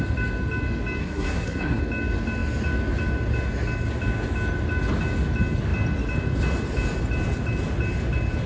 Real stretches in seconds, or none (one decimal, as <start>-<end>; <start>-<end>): 0.0-1.0; 1.8-8.5

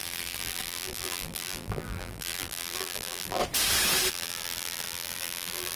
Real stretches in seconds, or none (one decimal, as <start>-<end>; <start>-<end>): 3.4-4.1

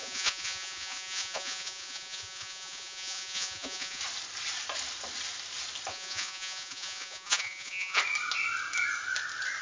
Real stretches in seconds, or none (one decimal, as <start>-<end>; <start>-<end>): 4.0-5.9; 8.0-9.6

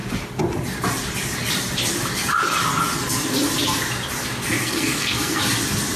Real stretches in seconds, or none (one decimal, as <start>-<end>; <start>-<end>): 0.0-4.6; 5.4-6.0

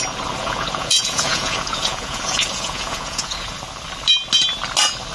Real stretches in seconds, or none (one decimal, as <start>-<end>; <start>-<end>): 0.0-0.4; 3.5-5.1